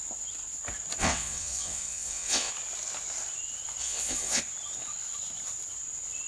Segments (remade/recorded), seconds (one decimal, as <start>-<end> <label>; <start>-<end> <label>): 0.0-1.0 recorded; 1.0-2.5 remade; 2.5-3.8 recorded; 3.8-4.4 remade; 4.4-6.3 recorded